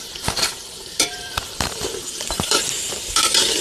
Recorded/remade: remade